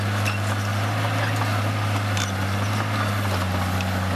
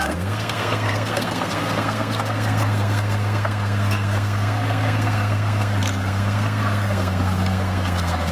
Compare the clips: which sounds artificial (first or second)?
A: second